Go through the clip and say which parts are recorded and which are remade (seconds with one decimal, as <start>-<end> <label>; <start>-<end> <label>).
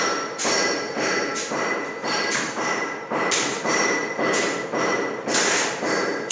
0.0-6.3 recorded